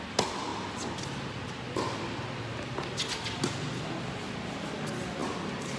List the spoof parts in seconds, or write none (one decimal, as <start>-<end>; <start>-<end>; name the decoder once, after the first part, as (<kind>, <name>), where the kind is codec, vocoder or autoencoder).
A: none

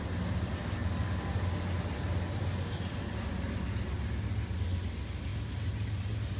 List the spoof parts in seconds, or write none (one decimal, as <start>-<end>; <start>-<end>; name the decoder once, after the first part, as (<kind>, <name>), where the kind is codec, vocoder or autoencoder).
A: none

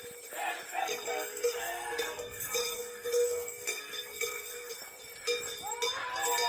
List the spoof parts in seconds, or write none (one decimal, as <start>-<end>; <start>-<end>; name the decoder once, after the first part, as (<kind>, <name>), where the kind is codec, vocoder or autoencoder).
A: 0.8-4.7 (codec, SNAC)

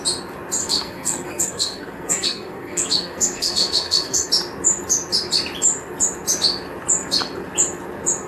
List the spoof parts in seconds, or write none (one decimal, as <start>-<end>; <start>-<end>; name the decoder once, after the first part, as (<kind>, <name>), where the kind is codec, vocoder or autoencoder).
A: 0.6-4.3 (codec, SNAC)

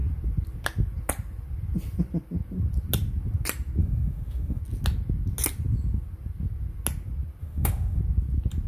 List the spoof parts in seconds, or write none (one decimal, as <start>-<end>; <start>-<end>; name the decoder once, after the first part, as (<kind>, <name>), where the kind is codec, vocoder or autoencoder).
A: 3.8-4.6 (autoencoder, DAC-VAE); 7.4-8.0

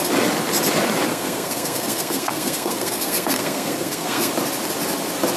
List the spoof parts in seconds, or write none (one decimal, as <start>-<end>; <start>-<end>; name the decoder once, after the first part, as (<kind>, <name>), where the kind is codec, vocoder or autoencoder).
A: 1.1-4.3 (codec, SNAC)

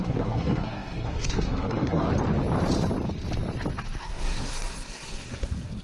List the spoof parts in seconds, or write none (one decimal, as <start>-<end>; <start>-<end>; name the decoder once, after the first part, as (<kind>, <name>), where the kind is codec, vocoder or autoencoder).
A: 0.0-2.1 (codec, SNAC); 4.0-5.8